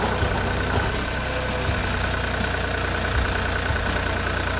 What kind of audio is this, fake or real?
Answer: real